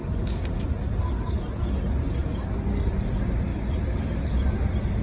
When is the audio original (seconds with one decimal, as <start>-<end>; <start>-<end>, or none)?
0.0-5.0